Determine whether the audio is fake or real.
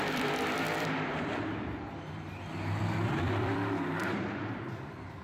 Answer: fake